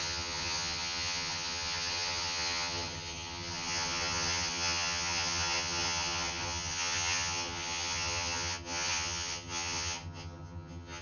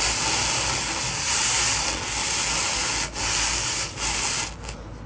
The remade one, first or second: first